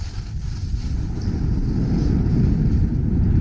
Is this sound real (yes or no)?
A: yes